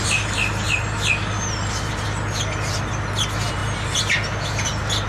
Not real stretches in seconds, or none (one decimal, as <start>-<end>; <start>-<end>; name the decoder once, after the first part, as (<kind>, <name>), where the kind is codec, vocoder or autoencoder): none